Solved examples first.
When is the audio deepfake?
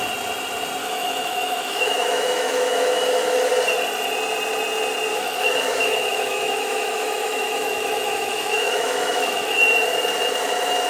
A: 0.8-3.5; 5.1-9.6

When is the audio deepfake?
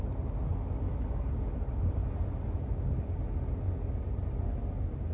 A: none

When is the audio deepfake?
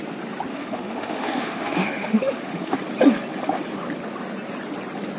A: 0.5-2.8